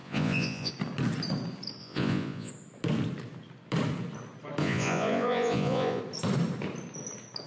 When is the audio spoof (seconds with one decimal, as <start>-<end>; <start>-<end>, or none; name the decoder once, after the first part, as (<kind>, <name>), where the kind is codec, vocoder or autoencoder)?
0.0-0.7 (vocoder, Vocos); 1.8-2.5; 4.6-6.0